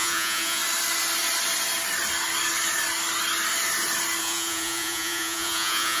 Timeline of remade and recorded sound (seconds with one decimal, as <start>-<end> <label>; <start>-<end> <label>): 0.0-0.6 remade; 0.6-4.2 recorded; 4.2-6.0 remade